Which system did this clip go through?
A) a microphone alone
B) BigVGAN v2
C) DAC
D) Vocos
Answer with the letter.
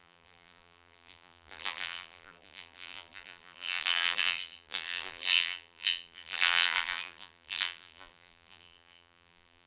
B